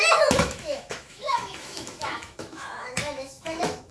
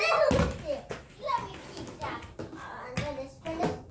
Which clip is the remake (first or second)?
first